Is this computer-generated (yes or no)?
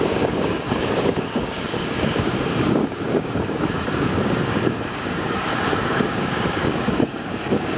yes